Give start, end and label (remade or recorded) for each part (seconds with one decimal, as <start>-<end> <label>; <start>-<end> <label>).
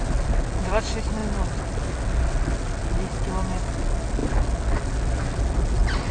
0.0-6.1 recorded